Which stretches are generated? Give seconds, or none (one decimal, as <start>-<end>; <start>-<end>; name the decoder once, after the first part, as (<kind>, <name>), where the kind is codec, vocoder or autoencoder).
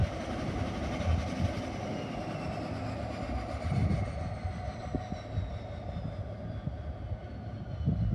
none